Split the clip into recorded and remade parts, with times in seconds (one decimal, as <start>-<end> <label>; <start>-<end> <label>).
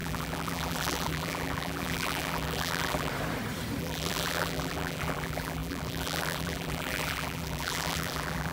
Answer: 0.0-3.1 remade; 3.1-3.8 recorded; 3.8-8.5 remade